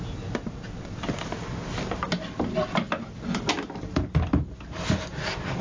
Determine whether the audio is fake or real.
real